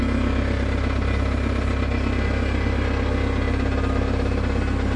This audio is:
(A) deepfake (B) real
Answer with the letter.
B